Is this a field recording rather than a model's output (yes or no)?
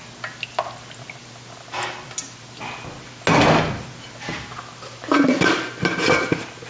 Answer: yes